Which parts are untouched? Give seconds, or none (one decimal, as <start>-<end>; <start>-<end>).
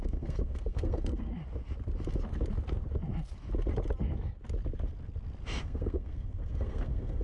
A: 1.3-5.6